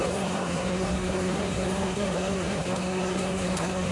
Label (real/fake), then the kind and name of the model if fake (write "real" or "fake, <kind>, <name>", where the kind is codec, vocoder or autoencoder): fake, codec, SNAC